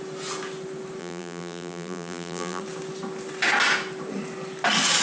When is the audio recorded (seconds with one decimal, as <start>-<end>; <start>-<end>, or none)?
0.0-1.0; 2.6-5.0